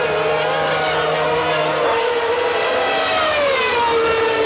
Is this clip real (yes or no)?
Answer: yes